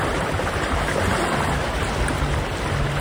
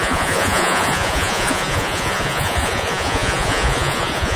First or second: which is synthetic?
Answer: second